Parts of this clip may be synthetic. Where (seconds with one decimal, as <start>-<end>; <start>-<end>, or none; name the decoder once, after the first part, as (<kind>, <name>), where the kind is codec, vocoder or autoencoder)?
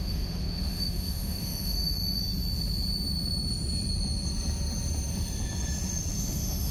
0.0-2.2 (autoencoder, DAC-VAE); 6.2-6.7